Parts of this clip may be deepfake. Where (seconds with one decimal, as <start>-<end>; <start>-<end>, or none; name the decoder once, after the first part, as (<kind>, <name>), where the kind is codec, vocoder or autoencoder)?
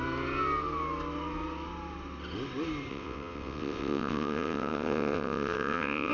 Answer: 2.9-6.1 (vocoder, WaveNeXt)